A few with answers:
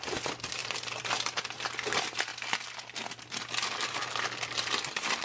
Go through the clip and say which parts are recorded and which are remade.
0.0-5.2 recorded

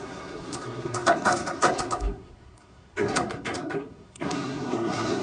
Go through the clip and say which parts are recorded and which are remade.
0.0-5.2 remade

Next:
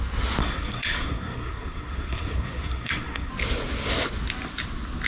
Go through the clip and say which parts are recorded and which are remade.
0.0-0.4 recorded; 0.4-3.3 remade; 3.3-5.1 recorded

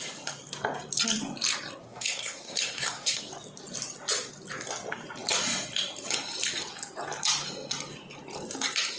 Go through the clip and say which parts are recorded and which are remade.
0.0-1.8 recorded; 1.8-3.3 remade; 3.3-9.0 recorded

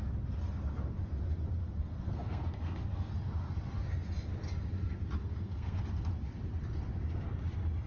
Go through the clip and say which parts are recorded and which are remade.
0.0-1.6 recorded; 1.6-3.1 remade; 3.1-5.2 recorded; 5.2-5.8 remade; 5.8-7.9 recorded